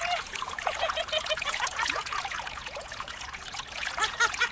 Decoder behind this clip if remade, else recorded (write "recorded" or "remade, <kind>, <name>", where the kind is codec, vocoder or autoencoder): remade, vocoder, Vocos